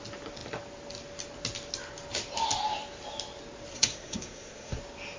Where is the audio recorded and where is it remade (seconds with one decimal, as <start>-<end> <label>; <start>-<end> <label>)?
0.0-3.7 recorded; 3.7-4.8 remade; 4.8-5.2 recorded